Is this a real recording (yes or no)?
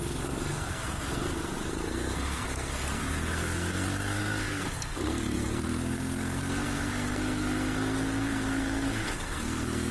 no